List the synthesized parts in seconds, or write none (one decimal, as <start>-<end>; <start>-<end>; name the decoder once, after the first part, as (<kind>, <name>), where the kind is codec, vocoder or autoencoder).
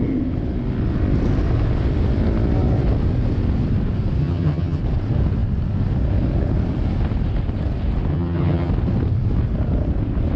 4.2-4.8 (vocoder, HiFi-GAN); 8.1-8.7